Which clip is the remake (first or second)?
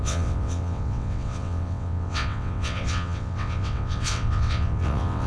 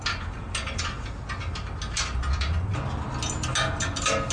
first